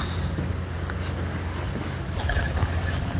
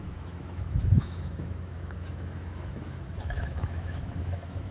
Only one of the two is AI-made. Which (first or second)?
second